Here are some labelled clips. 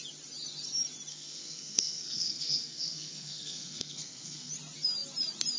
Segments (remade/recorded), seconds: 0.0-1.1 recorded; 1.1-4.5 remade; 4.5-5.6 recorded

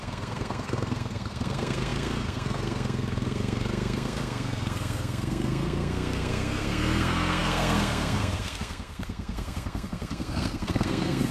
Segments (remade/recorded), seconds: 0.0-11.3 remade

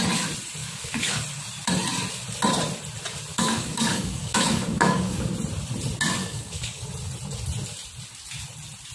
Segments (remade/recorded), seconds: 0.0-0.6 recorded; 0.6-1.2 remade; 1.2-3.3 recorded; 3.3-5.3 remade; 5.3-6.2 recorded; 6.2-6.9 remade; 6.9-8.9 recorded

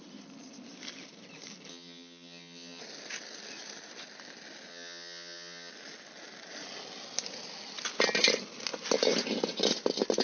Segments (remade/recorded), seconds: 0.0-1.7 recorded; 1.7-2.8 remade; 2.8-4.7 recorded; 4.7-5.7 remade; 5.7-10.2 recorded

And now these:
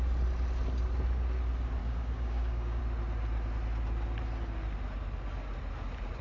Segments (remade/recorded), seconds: 0.0-1.8 recorded; 1.8-2.8 remade; 2.8-6.2 recorded